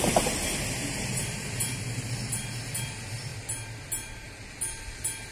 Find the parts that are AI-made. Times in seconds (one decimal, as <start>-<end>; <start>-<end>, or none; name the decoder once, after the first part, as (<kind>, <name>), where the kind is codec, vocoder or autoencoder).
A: none